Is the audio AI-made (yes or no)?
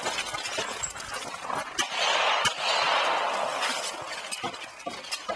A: no